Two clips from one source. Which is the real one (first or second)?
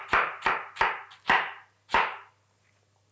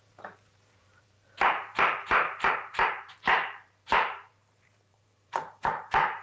first